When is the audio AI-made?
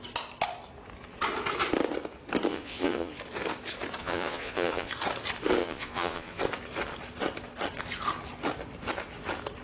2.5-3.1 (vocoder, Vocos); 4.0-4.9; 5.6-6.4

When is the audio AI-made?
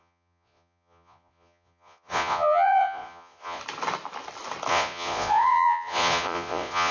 0.0-3.6 (vocoder, Vocos); 4.7-6.9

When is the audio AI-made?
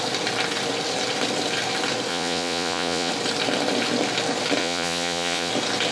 2.1-3.1 (vocoder, Vocos); 4.6-5.5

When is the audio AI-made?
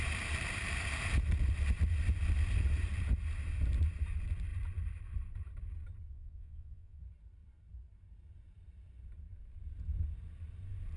6.1-7.0 (vocoder, Vocos)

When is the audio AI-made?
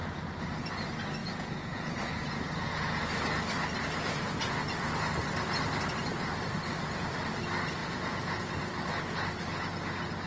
1.2-3.0 (vocoder, Vocos); 7.8-8.5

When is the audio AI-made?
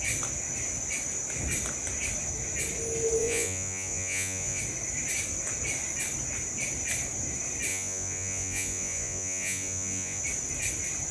3.2-4.6 (vocoder, Vocos); 7.7-10.2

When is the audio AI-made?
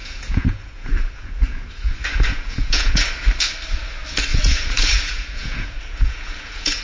0.0-1.7 (vocoder, Vocos); 2.3-3.0; 4.3-6.8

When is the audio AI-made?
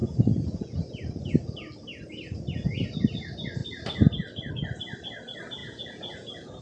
0.0-0.8 (vocoder, Vocos); 5.6-6.6